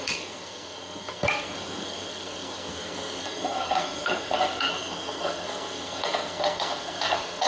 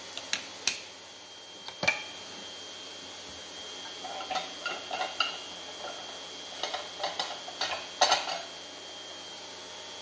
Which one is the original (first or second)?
second